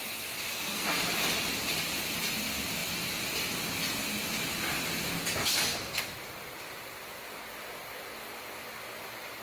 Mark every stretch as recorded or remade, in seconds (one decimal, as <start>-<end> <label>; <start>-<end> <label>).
0.0-0.5 recorded; 0.5-1.0 remade; 1.0-5.4 recorded; 5.4-6.0 remade; 6.0-9.4 recorded